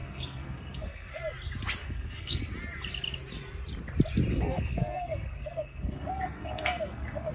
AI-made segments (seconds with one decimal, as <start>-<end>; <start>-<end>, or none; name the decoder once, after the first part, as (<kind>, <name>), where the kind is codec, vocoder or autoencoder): 0.0-1.2 (codec, SNAC); 1.8-2.4; 4.3-7.3